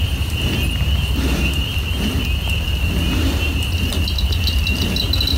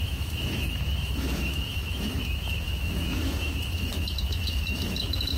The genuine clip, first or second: first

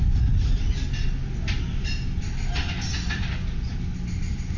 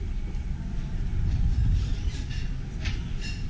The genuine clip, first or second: first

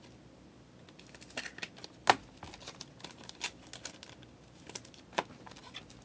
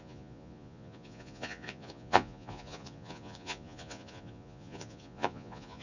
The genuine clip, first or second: first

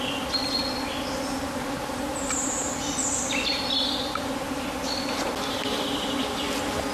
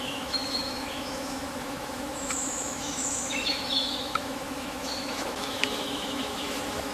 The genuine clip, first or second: first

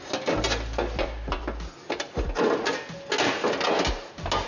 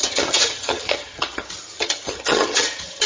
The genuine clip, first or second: first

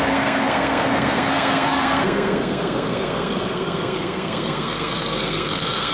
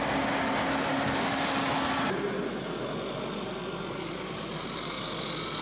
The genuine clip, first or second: second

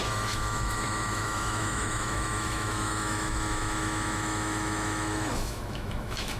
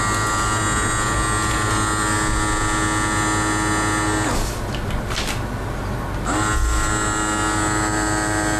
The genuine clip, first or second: second